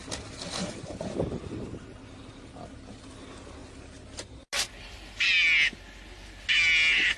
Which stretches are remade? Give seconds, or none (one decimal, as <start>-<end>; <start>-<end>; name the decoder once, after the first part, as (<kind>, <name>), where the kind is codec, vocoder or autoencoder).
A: none